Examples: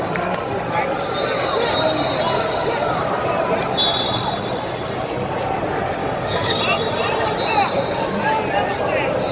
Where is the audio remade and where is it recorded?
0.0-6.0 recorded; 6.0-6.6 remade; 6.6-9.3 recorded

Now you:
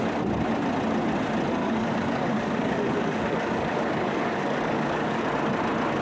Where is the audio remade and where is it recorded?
0.0-1.6 recorded; 1.6-5.2 remade; 5.2-6.0 recorded

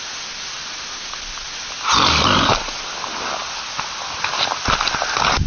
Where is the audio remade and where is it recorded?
0.0-5.5 recorded

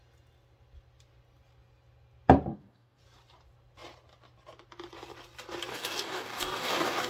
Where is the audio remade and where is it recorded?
0.0-2.5 recorded; 2.5-3.0 remade; 3.0-5.7 recorded; 5.7-7.1 remade

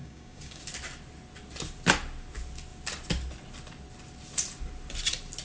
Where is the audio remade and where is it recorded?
0.0-0.6 remade; 0.6-5.4 recorded

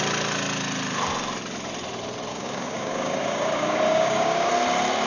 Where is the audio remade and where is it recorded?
0.0-2.3 recorded; 2.3-4.5 remade; 4.5-5.1 recorded

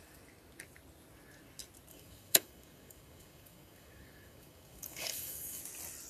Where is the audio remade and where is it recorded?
0.0-1.9 recorded; 1.9-5.6 remade; 5.6-6.1 recorded

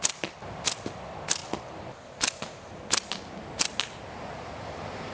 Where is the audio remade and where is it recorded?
0.0-5.1 recorded